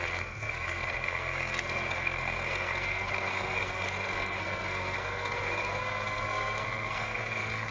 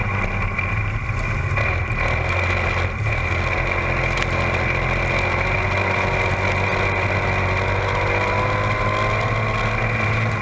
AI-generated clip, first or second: first